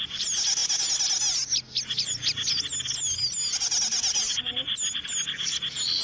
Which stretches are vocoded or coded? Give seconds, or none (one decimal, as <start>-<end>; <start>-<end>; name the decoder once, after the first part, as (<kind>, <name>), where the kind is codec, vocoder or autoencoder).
none